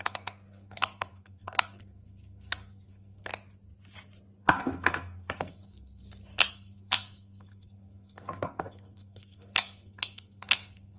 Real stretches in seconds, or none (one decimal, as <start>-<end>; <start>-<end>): 3.3-4.4; 6.0-6.5